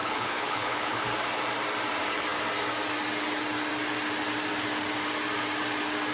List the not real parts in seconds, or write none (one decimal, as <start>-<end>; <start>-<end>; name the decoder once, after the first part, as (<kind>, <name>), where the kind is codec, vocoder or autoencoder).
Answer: 0.0-1.0 (codec, HILCodec)